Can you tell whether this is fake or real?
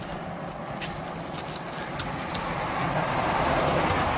real